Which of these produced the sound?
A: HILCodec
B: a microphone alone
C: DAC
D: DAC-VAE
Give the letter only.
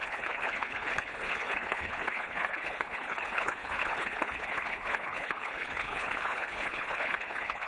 A